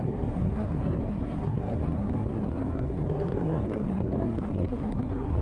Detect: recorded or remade remade